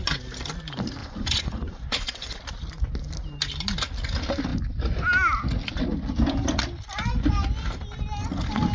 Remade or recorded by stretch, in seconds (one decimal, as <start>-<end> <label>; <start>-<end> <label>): 0.0-1.0 recorded; 1.0-2.4 remade; 2.4-8.7 recorded

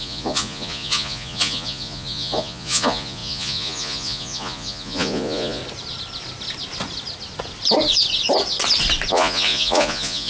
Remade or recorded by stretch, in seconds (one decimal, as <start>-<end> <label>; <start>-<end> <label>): 0.0-5.6 remade; 5.6-9.1 recorded; 9.1-10.3 remade